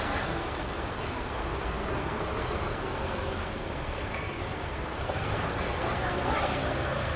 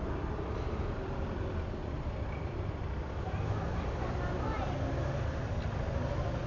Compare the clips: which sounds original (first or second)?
second